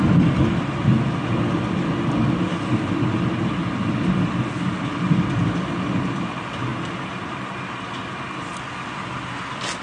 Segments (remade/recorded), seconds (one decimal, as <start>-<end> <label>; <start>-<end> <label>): 0.0-9.8 recorded